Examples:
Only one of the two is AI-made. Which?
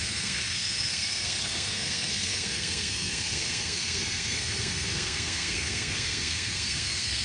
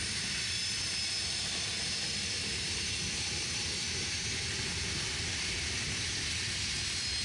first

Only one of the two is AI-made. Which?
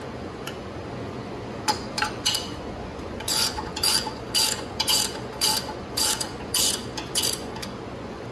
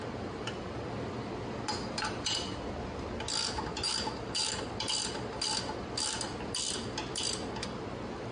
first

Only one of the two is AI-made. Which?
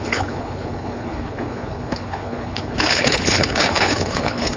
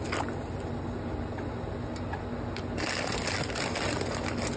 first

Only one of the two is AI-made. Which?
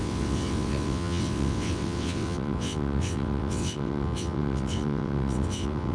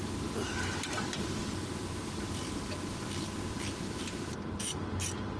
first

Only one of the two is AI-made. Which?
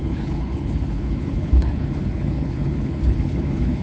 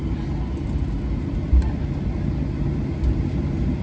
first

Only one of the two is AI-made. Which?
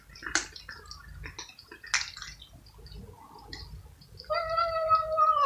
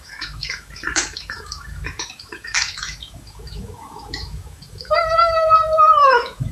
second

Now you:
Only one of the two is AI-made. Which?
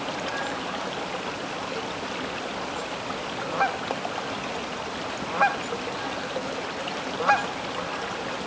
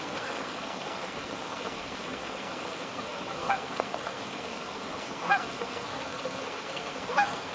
second